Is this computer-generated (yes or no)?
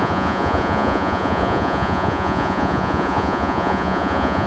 yes